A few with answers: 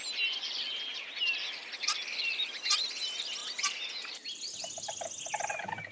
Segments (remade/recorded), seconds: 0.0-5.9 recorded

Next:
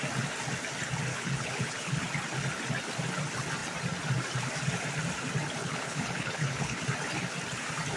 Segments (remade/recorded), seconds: 0.0-1.1 recorded; 1.1-2.0 remade; 2.0-5.6 recorded; 5.6-6.8 remade; 6.8-8.0 recorded

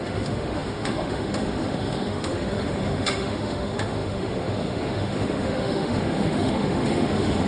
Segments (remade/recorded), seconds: 0.0-7.5 remade

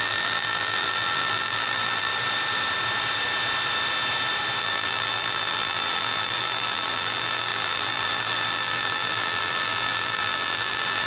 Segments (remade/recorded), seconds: 0.0-2.1 remade; 2.1-4.6 recorded; 4.6-11.1 remade